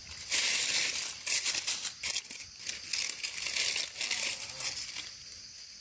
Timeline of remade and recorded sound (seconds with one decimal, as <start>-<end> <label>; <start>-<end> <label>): 0.0-5.8 recorded